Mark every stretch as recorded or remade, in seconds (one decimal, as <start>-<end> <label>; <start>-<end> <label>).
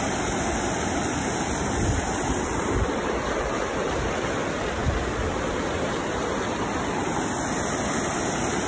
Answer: 0.0-8.7 recorded